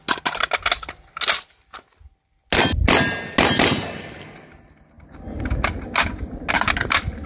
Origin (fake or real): real